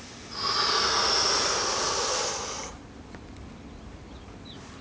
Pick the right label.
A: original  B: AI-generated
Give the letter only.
A